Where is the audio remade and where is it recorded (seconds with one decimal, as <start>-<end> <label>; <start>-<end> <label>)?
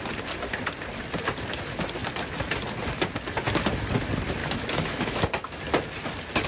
0.0-4.4 recorded; 4.4-5.2 remade; 5.2-6.5 recorded